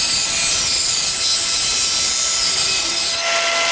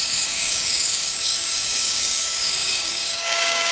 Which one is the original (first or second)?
first